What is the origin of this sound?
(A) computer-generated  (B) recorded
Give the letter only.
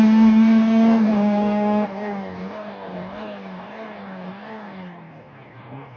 A